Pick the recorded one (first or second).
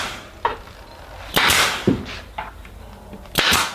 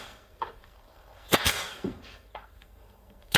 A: first